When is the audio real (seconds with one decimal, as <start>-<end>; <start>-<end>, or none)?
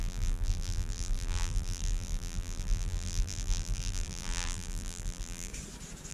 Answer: 5.5-6.1